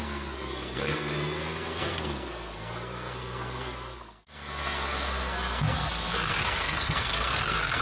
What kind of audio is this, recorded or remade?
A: remade